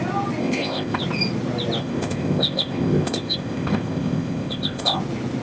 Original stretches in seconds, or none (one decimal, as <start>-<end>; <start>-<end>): 0.0-0.4; 1.0-1.8; 5.0-5.4